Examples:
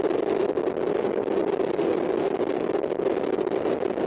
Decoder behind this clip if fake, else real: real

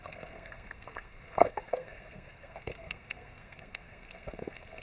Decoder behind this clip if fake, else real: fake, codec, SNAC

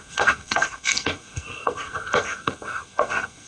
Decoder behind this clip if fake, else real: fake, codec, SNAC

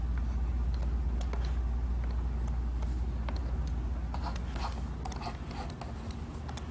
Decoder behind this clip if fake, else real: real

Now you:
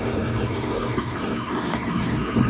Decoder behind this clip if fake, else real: fake, codec, SNAC